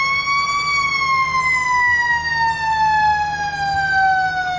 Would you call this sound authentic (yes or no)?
yes